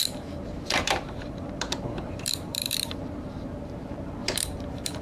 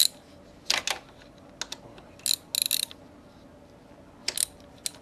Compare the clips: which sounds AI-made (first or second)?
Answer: first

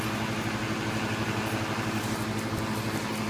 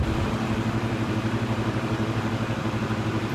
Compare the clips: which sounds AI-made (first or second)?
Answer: second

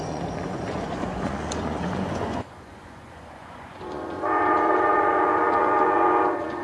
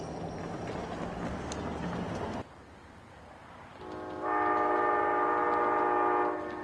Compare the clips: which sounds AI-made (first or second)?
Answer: first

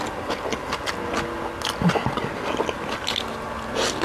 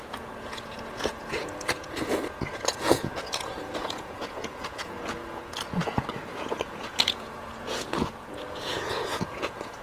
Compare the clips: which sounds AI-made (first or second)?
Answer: second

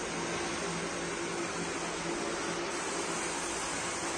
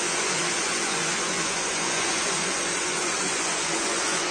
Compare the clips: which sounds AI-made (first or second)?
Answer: second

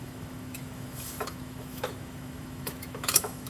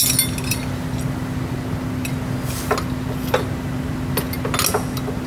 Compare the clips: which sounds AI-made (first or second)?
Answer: first